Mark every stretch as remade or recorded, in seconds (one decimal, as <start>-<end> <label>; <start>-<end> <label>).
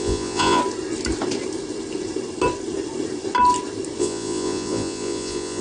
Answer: 0.0-0.6 remade; 0.6-4.0 recorded; 4.0-5.6 remade